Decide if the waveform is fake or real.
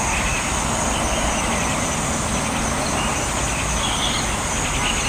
real